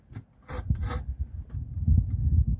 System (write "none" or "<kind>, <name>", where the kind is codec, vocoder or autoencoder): none